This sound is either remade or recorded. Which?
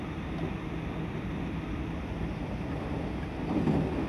recorded